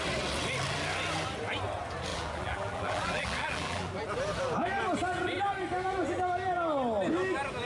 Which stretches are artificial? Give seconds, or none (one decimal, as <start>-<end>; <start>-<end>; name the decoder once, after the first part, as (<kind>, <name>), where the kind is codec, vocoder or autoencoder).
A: 2.1-3.9 (vocoder, BigVGAN v2)